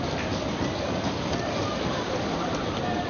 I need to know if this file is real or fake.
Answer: real